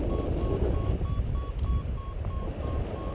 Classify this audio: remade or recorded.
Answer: recorded